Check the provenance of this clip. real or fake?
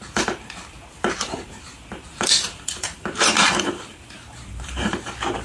fake